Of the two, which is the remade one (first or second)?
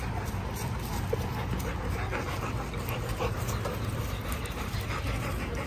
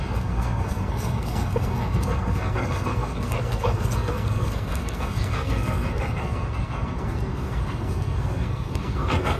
second